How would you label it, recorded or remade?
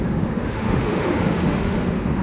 remade